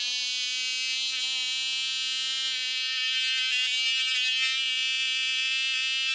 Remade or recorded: recorded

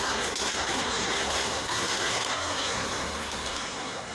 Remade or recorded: remade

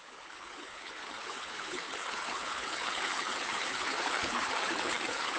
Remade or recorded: remade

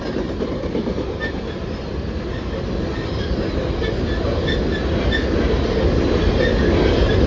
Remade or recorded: recorded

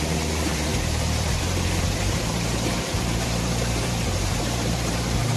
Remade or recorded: remade